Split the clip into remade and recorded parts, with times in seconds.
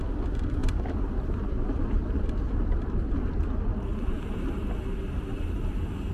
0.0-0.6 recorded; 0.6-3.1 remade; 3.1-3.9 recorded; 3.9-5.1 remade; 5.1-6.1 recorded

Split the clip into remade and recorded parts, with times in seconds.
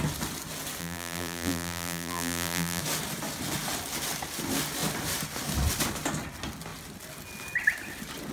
0.0-0.8 recorded; 0.8-2.8 remade; 2.8-8.3 recorded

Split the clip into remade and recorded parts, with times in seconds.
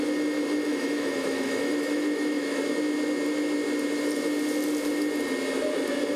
0.0-0.7 recorded; 0.7-2.6 remade; 2.6-6.2 recorded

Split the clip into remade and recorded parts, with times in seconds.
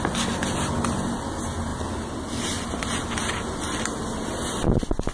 0.0-5.1 recorded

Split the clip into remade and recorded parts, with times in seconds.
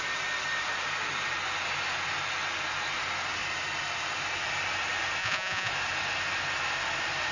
0.0-5.2 recorded; 5.2-5.7 remade; 5.7-7.3 recorded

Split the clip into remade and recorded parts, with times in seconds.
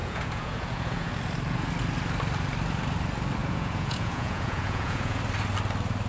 0.0-1.1 remade; 1.1-3.4 recorded; 3.4-5.2 remade; 5.2-6.1 recorded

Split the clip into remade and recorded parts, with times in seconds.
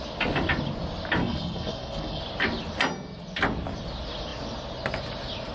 0.0-1.2 recorded; 1.2-2.2 remade; 2.2-5.5 recorded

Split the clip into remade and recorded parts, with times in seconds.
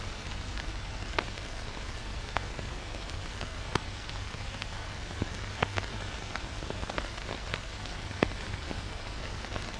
0.0-9.8 remade